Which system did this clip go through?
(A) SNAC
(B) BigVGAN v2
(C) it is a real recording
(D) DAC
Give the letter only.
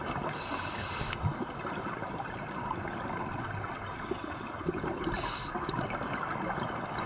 C